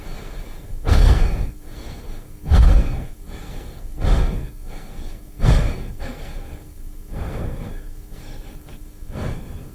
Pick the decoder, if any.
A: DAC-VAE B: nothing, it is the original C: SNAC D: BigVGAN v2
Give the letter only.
C